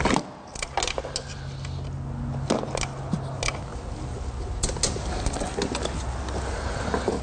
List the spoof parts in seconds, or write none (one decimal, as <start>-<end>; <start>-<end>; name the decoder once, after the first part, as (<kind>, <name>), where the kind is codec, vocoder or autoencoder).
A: none